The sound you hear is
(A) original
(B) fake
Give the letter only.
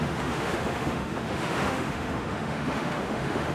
B